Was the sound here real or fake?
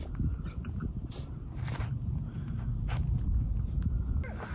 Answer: fake